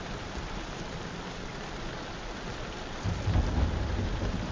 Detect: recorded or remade recorded